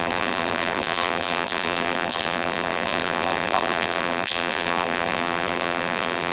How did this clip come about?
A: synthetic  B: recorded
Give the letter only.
A